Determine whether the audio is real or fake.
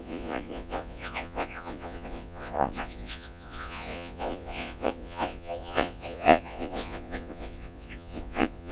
fake